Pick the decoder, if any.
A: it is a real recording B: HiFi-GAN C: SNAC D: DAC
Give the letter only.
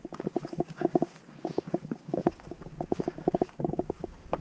D